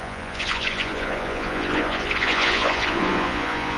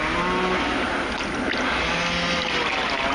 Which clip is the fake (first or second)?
first